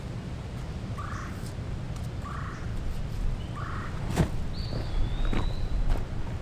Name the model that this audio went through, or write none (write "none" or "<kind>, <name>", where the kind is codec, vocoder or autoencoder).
none